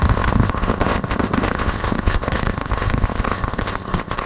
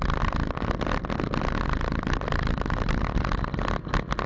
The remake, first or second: first